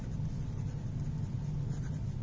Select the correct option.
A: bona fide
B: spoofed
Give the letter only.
A